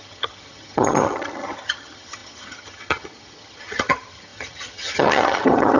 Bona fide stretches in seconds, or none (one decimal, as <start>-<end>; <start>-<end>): none